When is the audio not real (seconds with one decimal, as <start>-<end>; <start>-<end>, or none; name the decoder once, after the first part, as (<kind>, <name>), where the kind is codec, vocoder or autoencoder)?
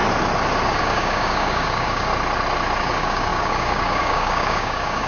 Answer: 0.8-2.1 (codec, DAC); 2.8-5.1